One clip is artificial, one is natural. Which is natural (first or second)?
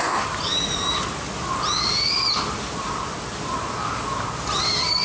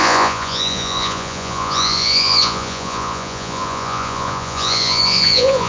first